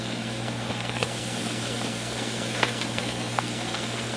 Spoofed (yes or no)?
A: yes